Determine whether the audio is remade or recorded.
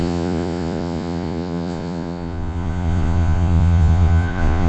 remade